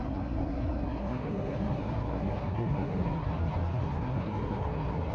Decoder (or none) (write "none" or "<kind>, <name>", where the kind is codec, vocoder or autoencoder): codec, SNAC